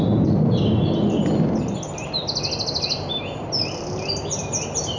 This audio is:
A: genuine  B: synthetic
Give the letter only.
A